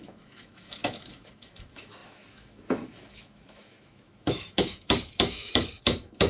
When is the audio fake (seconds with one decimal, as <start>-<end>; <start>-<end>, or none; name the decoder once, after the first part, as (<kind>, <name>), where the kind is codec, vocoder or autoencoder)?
0.0-6.3 (autoencoder, DAC-VAE)